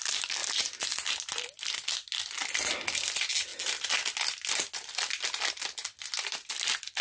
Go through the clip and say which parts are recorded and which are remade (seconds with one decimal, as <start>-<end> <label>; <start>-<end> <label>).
0.0-7.0 recorded